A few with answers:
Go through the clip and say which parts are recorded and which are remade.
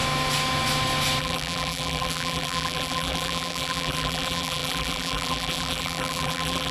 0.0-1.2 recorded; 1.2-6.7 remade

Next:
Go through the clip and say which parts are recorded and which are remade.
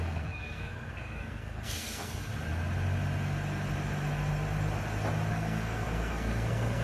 0.0-2.3 remade; 2.3-5.3 recorded; 5.3-6.8 remade